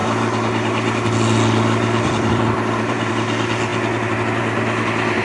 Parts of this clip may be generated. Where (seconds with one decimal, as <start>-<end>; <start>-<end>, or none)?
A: 0.0-3.1